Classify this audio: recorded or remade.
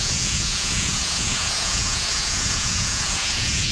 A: remade